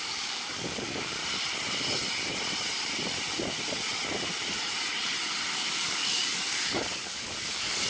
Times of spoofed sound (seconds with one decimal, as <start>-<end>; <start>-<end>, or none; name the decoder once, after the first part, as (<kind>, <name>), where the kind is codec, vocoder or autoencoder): 0.0-1.2 (codec, DAC); 5.5-7.9